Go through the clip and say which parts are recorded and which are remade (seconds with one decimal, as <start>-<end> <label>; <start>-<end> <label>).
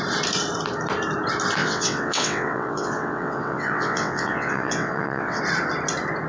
0.0-1.6 recorded; 1.6-5.4 remade; 5.4-6.3 recorded